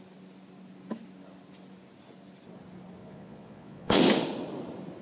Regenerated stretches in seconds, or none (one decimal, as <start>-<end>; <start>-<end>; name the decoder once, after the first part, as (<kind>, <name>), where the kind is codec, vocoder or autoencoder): 3.0-4.0 (vocoder, Vocos)